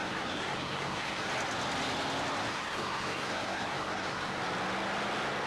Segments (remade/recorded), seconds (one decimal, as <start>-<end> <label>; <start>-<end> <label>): 0.0-1.3 remade; 1.3-2.5 recorded; 2.5-4.4 remade; 4.4-5.5 recorded